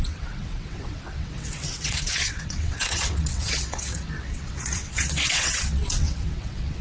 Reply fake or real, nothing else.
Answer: fake